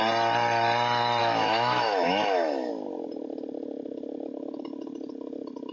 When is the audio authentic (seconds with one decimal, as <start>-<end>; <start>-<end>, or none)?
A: 0.0-1.2; 2.7-5.7